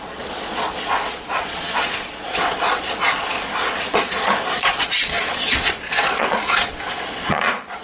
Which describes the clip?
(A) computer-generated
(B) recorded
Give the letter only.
A